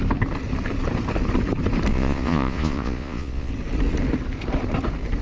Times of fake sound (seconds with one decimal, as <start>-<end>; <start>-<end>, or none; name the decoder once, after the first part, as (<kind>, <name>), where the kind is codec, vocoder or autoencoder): 1.9-3.5 (vocoder, Vocos)

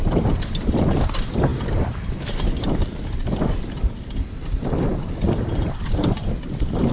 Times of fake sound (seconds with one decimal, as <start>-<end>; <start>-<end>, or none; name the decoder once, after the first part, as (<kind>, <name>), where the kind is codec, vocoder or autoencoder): none